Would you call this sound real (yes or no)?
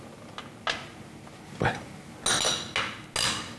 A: yes